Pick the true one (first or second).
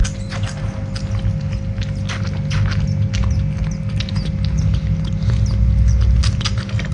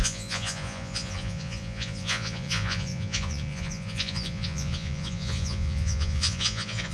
first